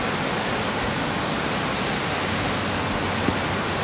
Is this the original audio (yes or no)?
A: yes